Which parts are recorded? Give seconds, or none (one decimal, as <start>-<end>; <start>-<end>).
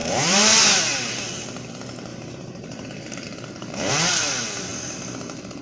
0.8-2.1; 3.9-5.6